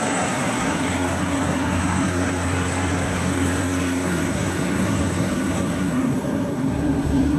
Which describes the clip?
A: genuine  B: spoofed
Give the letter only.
B